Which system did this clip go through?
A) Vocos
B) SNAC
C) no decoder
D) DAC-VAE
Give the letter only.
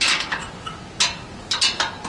C